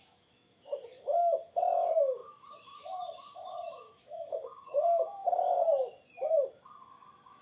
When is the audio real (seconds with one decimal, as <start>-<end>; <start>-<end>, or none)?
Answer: 5.2-6.9

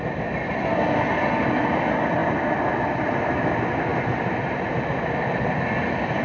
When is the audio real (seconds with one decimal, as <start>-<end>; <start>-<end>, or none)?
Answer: 0.0-6.2

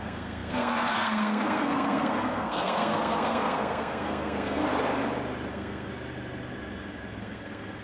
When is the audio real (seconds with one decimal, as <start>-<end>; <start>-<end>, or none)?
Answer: 4.6-5.5; 5.9-7.2

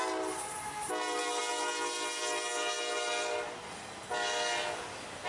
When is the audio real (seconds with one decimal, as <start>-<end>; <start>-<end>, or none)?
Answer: 0.0-5.3